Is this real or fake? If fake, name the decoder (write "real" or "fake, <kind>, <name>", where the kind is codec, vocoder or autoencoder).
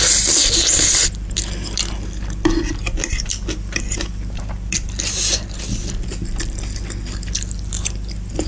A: fake, vocoder, BigVGAN v2